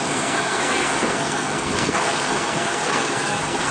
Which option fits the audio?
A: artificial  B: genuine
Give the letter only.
A